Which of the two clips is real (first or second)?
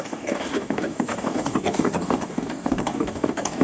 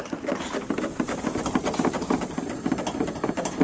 second